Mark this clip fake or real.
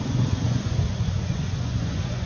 fake